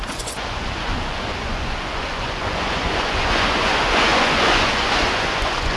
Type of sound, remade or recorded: remade